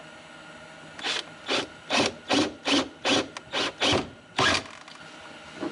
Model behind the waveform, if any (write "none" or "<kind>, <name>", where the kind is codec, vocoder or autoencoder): none